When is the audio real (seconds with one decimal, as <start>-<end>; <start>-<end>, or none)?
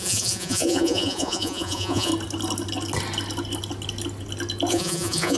2.1-4.7